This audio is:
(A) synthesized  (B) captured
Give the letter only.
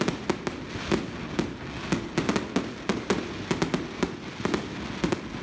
B